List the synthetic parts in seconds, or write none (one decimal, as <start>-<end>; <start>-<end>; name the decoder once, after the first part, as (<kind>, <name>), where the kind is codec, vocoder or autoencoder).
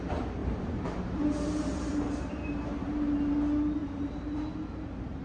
0.4-3.3 (vocoder, BigVGAN v2); 3.8-5.2